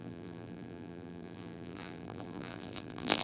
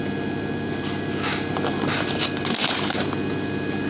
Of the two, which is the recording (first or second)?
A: second